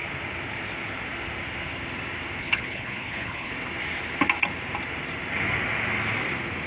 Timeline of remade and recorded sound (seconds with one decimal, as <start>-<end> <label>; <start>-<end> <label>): 0.0-2.4 recorded; 2.4-3.5 remade; 3.5-6.7 recorded